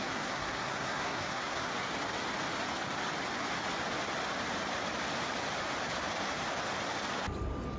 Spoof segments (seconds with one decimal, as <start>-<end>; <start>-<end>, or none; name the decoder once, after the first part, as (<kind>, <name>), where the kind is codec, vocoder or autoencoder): 0.0-1.7 (codec, SNAC)